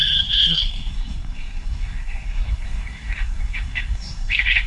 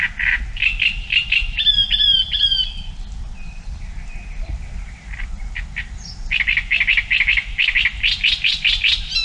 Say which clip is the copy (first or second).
first